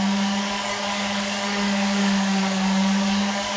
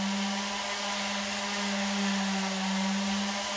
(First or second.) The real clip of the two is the second